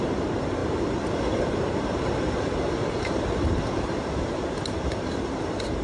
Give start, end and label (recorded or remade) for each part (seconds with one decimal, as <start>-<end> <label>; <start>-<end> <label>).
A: 0.0-5.8 remade